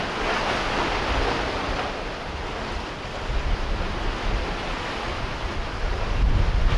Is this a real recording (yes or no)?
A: yes